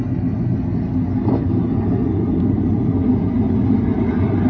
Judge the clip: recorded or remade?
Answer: recorded